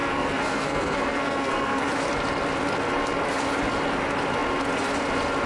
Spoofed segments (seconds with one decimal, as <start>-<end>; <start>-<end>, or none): 0.0-1.9